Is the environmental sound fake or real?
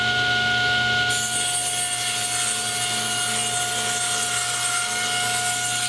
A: real